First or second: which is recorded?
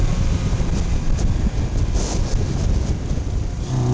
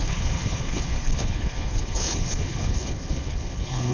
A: first